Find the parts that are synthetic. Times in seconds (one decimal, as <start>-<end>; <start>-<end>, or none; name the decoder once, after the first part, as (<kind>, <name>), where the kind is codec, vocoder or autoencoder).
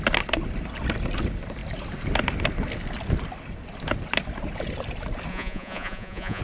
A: 5.3-6.4 (vocoder, Vocos)